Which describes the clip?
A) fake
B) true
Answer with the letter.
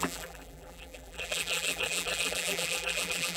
A